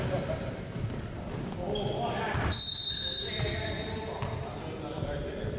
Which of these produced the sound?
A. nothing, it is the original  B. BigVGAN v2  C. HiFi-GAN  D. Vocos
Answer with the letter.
A